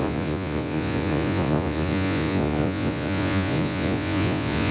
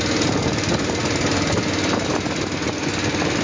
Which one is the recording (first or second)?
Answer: second